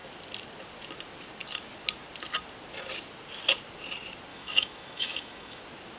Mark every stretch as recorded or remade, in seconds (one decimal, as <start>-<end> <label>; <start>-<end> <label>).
0.0-4.3 recorded; 4.3-5.6 remade; 5.6-6.0 recorded